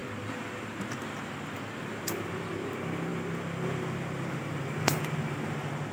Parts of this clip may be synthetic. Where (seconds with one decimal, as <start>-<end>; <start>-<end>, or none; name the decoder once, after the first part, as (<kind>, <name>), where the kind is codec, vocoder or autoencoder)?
0.0-2.3 (vocoder, BigVGAN v2)